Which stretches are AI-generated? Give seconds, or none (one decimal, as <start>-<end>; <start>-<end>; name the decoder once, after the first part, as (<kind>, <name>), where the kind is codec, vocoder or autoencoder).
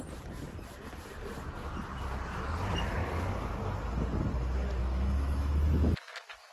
4.8-6.5 (autoencoder, DAC-VAE)